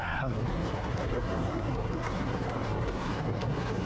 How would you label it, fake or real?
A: fake